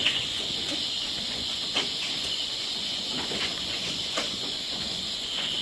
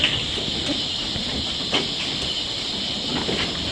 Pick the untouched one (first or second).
second